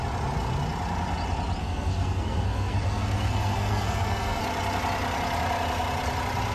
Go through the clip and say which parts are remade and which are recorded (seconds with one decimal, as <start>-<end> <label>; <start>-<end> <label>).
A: 0.0-1.6 recorded; 1.6-4.4 remade; 4.4-6.5 recorded